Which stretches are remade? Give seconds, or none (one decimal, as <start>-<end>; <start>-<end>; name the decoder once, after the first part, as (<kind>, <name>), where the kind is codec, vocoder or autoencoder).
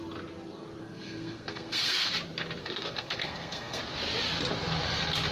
0.8-2.1 (codec, SNAC); 2.6-3.8